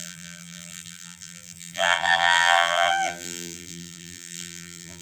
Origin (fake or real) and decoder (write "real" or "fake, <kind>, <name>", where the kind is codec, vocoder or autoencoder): fake, vocoder, BigVGAN v2